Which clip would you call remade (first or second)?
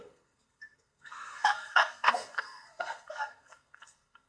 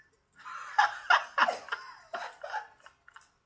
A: first